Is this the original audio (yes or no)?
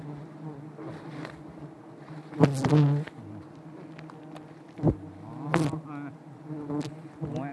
yes